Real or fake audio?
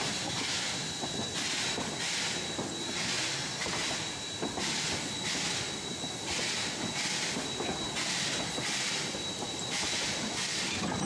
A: real